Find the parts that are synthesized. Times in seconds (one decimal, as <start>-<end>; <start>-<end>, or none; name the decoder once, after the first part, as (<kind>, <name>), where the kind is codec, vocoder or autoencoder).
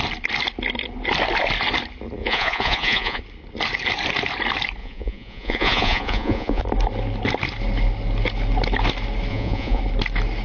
2.2-3.2 (vocoder, Vocos); 4.8-6.6; 9.3-9.8